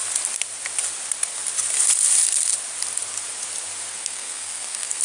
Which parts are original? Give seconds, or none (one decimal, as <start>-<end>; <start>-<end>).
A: 0.0-3.9